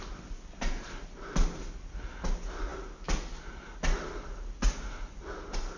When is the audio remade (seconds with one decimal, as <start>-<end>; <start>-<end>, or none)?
none